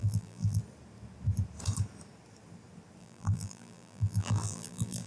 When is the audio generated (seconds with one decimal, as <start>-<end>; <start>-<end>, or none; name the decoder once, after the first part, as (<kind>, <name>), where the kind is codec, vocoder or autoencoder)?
0.0-0.6 (vocoder, BigVGAN v2); 3.0-5.1